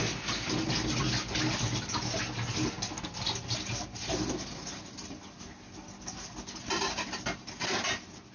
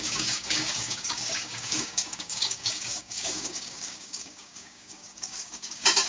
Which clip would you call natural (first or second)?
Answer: first